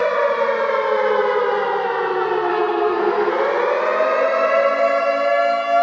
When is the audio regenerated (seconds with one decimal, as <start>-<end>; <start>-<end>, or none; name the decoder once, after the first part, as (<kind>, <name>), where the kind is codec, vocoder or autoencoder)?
2.5-3.3 (codec, SNAC)

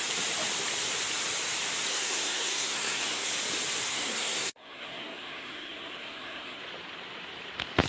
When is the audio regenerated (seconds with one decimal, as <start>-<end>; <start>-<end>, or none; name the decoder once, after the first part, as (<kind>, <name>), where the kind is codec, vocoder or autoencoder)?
1.9-3.3 (codec, SNAC); 3.9-6.6

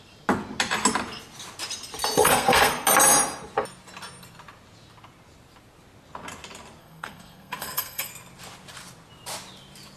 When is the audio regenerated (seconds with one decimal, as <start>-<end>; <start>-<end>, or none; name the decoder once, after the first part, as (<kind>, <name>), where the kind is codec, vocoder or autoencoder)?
2.2-2.7 (codec, SNAC); 6.8-8.1

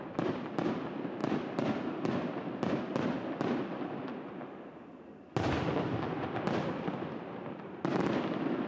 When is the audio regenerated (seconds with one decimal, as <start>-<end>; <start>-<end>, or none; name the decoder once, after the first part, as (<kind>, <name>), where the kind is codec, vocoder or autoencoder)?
none

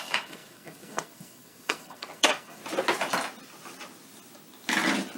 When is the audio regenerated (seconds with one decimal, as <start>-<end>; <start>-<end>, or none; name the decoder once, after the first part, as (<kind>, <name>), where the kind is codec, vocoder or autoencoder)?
0.0-2.6 (codec, SNAC)

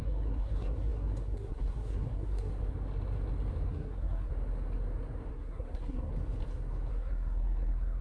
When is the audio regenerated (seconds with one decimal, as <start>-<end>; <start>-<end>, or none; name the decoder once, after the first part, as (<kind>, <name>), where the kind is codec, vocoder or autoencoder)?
0.0-2.5 (codec, SNAC); 3.7-4.3; 5.3-6.1; 6.9-8.0

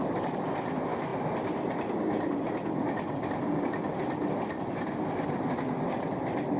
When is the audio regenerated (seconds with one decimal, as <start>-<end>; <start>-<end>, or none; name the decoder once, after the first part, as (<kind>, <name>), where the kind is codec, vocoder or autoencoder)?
none

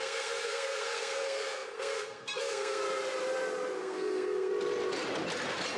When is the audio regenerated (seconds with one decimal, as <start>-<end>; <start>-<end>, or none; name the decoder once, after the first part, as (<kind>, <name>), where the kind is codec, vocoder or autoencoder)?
0.0-2.8 (codec, SNAC); 3.8-4.5